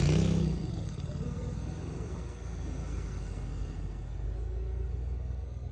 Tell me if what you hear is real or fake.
fake